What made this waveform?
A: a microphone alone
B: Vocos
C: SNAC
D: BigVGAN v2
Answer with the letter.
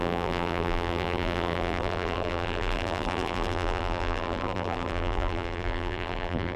D